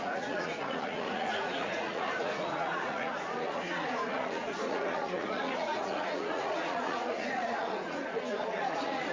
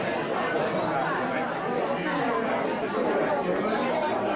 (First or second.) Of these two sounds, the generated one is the first